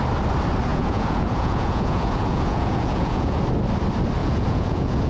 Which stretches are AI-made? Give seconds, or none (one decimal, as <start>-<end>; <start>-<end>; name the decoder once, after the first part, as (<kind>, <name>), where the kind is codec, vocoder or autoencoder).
0.7-3.4 (vocoder, Vocos); 4.2-5.1